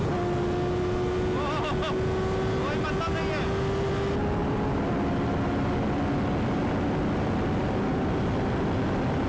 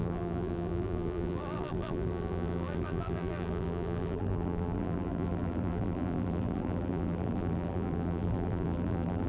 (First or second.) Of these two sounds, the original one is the first